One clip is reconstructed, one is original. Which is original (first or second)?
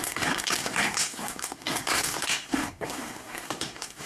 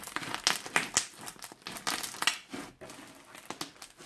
second